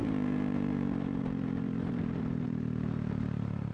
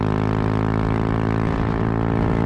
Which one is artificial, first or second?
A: first